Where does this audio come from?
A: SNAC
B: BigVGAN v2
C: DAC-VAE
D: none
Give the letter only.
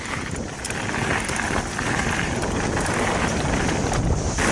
D